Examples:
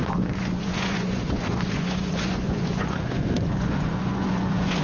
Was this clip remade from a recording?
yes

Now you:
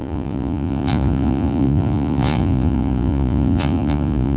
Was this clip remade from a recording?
yes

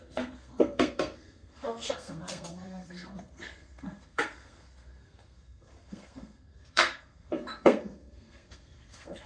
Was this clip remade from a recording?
yes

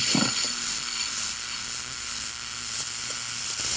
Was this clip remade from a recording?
no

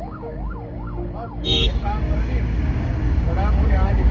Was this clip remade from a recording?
yes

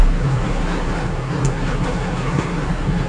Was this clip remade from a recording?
yes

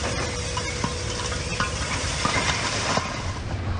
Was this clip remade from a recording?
no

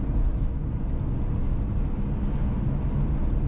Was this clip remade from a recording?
no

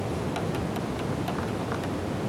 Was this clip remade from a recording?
no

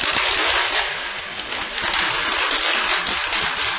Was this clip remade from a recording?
no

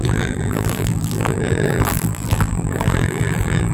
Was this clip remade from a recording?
yes